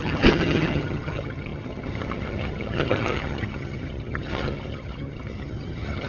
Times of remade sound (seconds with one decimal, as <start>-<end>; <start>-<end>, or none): 0.0-6.1